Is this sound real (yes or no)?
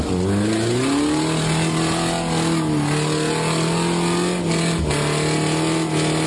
yes